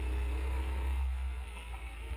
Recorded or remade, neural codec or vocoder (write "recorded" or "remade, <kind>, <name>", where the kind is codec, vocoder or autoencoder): remade, codec, SNAC